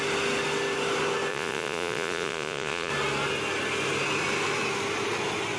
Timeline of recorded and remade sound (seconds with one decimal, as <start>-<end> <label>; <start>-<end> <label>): 0.0-1.3 recorded; 1.3-2.9 remade; 2.9-5.6 recorded